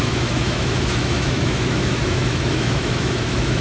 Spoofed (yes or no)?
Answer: yes